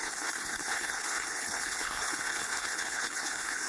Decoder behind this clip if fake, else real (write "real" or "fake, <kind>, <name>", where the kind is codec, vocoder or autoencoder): fake, codec, HILCodec